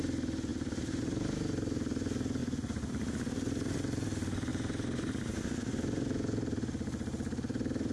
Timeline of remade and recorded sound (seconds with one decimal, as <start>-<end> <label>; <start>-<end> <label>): 0.0-0.5 recorded; 0.5-1.0 remade; 1.0-2.4 recorded; 2.4-2.9 remade; 2.9-4.5 recorded; 4.5-5.6 remade; 5.6-7.9 recorded